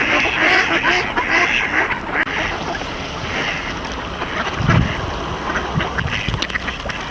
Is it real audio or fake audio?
real